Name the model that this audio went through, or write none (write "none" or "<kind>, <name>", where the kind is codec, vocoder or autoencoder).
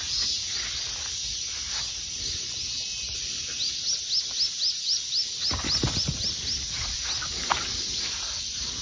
none